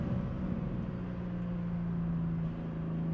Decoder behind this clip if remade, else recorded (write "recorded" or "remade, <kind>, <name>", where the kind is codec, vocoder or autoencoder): recorded